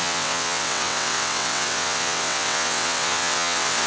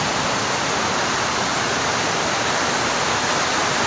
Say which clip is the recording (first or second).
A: second